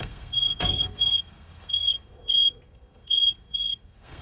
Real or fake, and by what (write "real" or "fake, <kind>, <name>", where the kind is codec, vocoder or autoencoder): fake, codec, SNAC